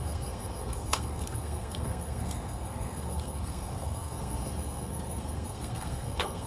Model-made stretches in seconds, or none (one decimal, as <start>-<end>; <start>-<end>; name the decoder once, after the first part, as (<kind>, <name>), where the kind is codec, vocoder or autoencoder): 0.0-6.5 (codec, SNAC)